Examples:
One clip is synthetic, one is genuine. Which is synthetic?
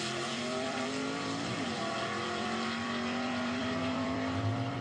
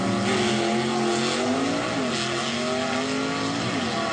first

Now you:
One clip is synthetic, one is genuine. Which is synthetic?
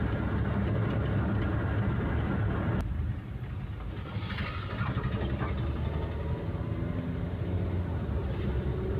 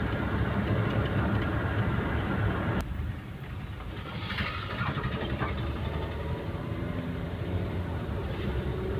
second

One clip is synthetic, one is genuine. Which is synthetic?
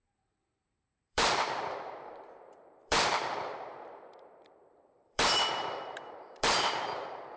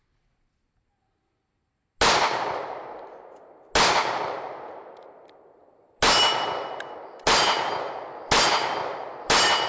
first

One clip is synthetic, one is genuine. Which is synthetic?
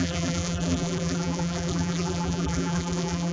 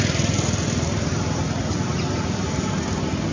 first